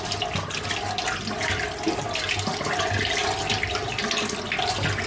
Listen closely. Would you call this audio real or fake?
real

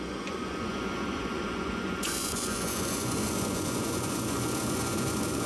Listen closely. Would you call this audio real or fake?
fake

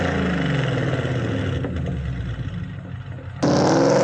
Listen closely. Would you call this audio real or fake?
real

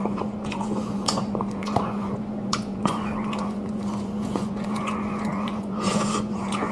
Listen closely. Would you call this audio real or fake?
fake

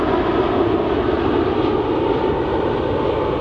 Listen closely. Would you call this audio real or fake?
real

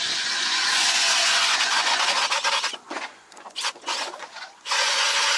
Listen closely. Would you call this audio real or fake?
fake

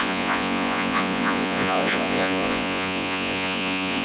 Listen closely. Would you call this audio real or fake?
fake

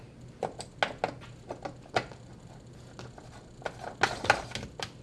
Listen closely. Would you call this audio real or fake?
real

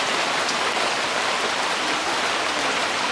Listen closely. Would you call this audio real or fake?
real